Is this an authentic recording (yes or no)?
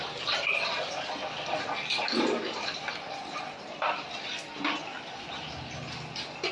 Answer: yes